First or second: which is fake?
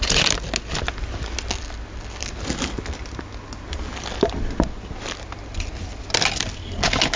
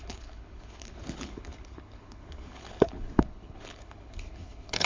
second